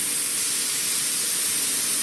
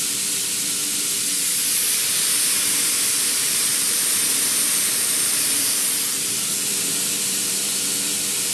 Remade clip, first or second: second